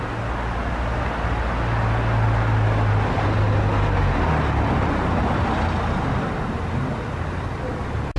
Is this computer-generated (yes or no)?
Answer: no